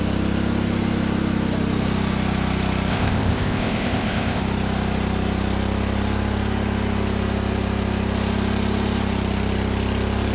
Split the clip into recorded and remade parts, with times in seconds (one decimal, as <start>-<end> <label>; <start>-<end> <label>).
0.0-2.9 recorded; 2.9-4.4 remade; 4.4-10.3 recorded